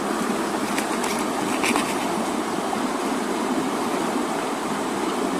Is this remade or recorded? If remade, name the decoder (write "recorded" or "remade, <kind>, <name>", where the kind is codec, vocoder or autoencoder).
recorded